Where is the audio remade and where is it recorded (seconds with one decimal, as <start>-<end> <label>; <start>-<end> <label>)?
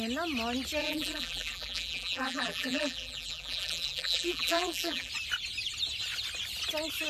0.0-0.8 recorded; 0.8-5.1 remade; 5.1-7.1 recorded